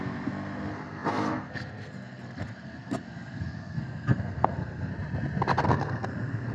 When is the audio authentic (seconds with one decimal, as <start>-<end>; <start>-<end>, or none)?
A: 4.9-5.6